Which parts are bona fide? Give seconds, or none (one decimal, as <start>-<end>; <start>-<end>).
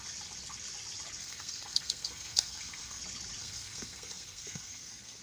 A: 0.0-1.2; 3.0-3.4